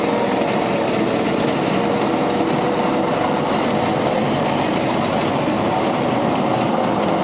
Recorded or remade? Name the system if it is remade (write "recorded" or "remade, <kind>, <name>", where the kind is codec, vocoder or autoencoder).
recorded